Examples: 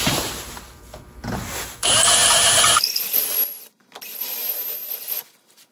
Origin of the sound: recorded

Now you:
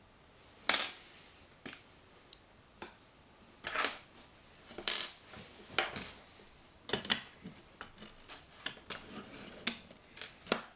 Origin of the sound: recorded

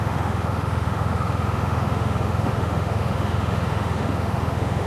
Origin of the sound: remade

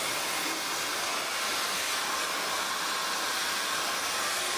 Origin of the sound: recorded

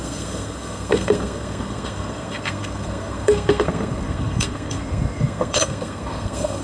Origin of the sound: remade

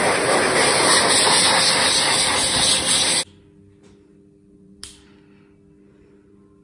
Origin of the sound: recorded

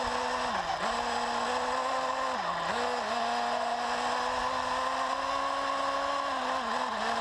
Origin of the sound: recorded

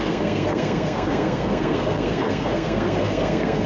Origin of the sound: remade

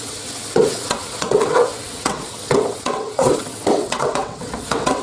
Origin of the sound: remade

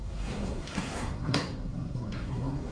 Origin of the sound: remade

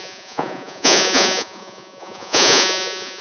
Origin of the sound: remade